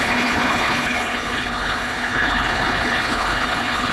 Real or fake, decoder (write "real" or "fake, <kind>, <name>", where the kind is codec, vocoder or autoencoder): fake, codec, HILCodec